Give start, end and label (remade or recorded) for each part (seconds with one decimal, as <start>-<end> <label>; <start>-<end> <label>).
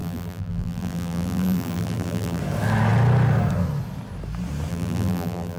0.0-2.4 remade; 2.4-4.7 recorded; 4.7-5.6 remade